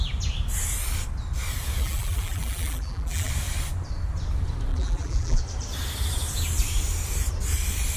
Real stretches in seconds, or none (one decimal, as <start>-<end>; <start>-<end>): 0.0-1.8; 3.3-4.7; 5.4-8.0